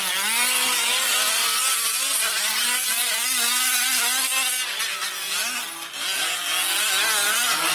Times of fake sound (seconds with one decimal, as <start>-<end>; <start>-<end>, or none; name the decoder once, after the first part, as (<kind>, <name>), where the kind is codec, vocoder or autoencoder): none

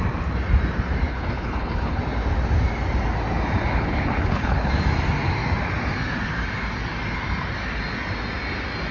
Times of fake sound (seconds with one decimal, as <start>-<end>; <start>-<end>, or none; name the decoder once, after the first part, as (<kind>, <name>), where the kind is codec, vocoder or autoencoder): 1.1-2.0 (codec, HILCodec); 3.7-4.7

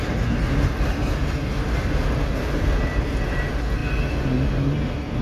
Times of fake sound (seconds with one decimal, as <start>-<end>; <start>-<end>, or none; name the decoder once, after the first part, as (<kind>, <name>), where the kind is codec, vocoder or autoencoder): none

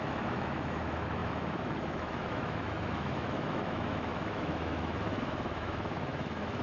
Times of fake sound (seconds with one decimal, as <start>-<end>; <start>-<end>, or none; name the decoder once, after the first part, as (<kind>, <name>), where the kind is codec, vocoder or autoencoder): 0.0-6.6 (autoencoder, DAC-VAE)